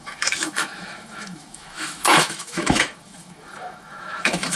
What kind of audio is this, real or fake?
fake